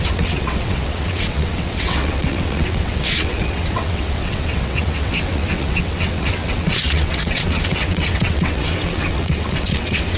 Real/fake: fake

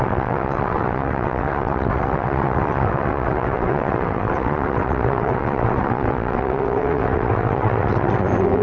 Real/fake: fake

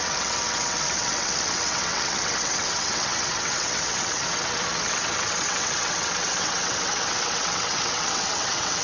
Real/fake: fake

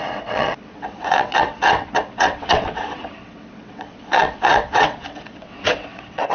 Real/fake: fake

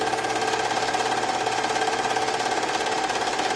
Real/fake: real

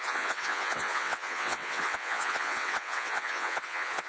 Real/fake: fake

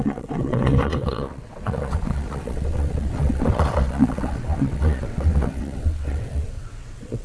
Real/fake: fake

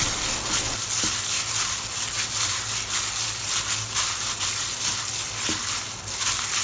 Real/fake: real